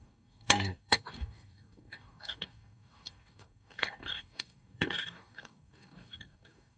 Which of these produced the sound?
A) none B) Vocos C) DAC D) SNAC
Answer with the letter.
C